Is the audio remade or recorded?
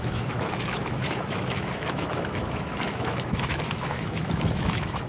remade